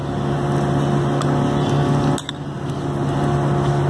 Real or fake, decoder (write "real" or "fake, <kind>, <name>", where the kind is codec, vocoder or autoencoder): real